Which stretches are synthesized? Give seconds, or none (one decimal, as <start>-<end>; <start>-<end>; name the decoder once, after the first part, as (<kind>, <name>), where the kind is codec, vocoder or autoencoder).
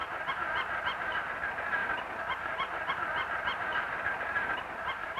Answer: 0.0-5.2 (vocoder, BigVGAN v2)